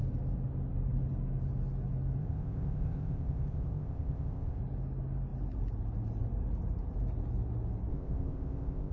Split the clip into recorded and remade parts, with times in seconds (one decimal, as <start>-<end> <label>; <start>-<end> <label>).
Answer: 0.0-2.2 recorded; 2.2-4.6 remade; 4.6-7.9 recorded; 7.9-8.9 remade